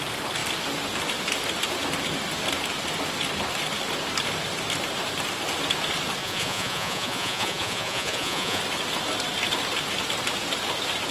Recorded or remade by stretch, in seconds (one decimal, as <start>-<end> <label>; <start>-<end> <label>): 0.0-6.2 recorded; 6.2-8.6 remade; 8.6-11.1 recorded